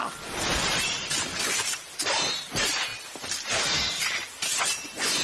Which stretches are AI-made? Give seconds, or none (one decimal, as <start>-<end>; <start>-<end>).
0.5-1.8